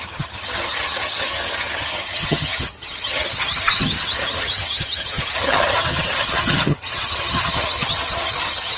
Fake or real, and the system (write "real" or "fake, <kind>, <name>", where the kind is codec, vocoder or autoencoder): fake, vocoder, HiFi-GAN